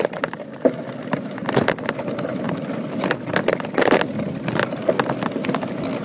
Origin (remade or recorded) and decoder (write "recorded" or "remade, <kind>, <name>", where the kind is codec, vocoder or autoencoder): remade, vocoder, BigVGAN v2